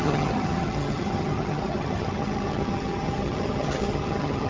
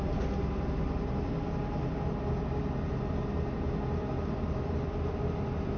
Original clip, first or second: second